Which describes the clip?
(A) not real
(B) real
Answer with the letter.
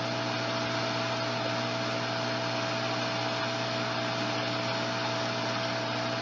B